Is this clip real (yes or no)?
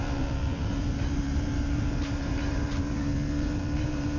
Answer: no